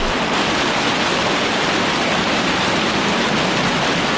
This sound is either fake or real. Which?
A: real